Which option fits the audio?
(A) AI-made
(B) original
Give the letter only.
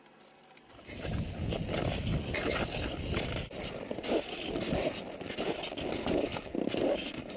B